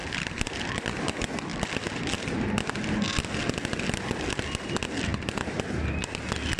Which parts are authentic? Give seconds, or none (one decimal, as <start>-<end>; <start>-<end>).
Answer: 0.7-1.5; 2.0-5.1; 5.8-6.6